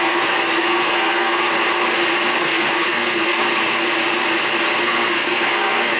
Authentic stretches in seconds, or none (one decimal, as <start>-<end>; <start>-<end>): 1.5-2.4; 3.4-4.8